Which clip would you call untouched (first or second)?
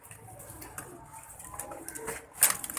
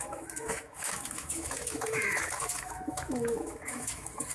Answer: first